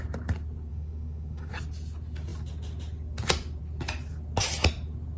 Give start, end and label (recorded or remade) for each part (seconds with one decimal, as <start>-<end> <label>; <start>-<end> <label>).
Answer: 0.0-0.7 recorded; 0.7-1.5 remade; 1.5-5.2 recorded